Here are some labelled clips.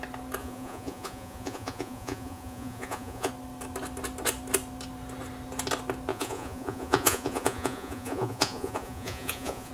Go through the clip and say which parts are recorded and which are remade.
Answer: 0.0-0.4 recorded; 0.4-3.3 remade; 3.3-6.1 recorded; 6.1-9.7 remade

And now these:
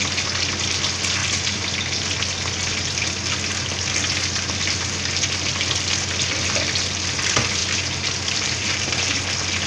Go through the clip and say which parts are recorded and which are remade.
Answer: 0.0-7.6 recorded; 7.6-9.2 remade; 9.2-9.7 recorded

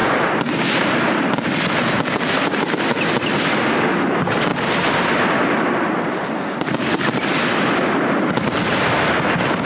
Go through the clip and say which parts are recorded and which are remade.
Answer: 0.0-3.8 remade; 3.8-4.5 recorded; 4.5-7.9 remade; 7.9-9.7 recorded

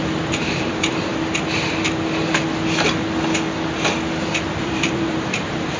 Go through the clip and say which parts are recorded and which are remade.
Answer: 0.0-1.1 remade; 1.1-4.6 recorded; 4.6-5.8 remade

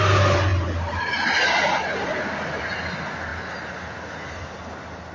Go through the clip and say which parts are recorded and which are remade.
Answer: 0.0-5.1 recorded

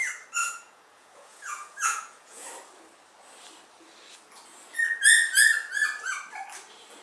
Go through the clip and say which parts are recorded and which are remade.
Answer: 0.0-0.4 recorded; 0.4-2.5 remade; 2.5-7.0 recorded

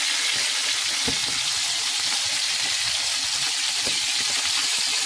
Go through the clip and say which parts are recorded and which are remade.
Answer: 0.0-5.1 recorded

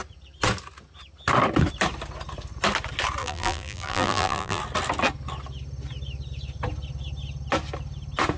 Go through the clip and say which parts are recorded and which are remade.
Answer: 0.0-3.2 recorded; 3.2-4.6 remade; 4.6-8.4 recorded